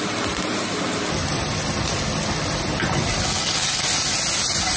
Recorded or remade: recorded